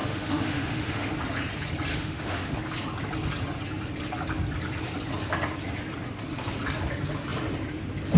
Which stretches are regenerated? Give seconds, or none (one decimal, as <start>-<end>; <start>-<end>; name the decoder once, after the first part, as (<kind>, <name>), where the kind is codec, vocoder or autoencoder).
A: 0.0-1.1 (autoencoder, DAC-VAE); 1.9-2.6